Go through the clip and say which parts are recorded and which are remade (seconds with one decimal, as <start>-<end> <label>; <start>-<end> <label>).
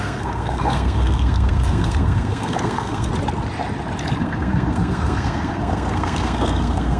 0.0-3.1 remade; 3.1-4.2 recorded; 4.2-7.0 remade